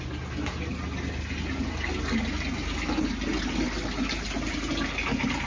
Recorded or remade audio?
recorded